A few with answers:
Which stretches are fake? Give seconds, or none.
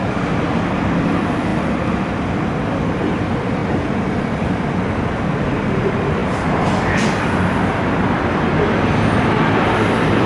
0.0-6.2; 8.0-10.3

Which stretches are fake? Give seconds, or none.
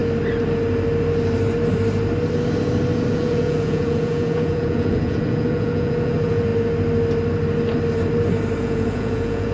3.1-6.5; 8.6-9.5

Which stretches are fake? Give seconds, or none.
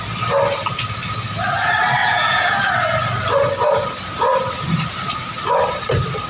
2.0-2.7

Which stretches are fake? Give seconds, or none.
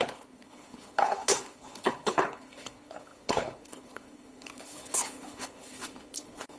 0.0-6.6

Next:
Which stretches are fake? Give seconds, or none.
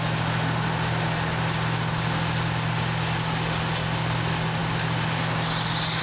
none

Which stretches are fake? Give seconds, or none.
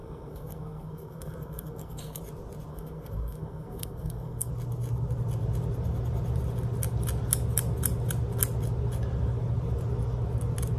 0.0-2.2; 2.7-4.5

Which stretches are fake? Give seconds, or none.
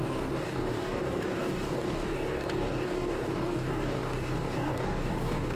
0.0-5.5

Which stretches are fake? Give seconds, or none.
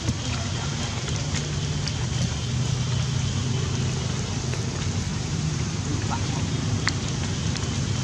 5.1-6.5